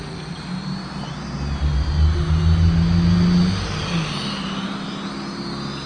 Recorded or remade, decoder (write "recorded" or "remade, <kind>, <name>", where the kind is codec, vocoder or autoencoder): recorded